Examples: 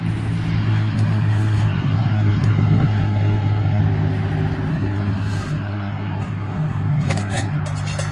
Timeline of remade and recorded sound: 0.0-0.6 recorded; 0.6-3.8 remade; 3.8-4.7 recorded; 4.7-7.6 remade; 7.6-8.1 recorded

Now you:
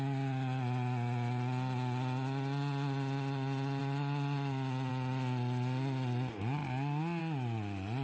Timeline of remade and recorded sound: 0.0-8.0 recorded

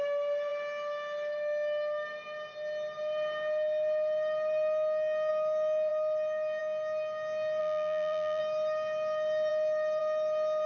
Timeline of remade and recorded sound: 0.0-7.6 recorded; 7.6-8.4 remade; 8.4-10.7 recorded

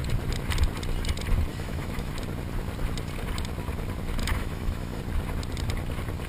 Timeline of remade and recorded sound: 0.0-1.5 recorded; 1.5-2.1 remade; 2.1-4.2 recorded; 4.2-5.0 remade; 5.0-6.3 recorded

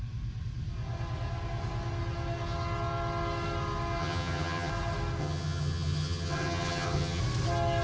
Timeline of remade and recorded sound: 0.0-4.0 recorded; 4.0-4.7 remade; 4.7-5.2 recorded; 5.2-7.2 remade; 7.2-7.8 recorded

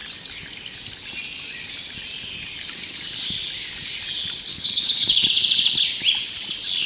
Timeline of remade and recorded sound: 0.0-4.5 recorded; 4.5-5.3 remade; 5.3-6.9 recorded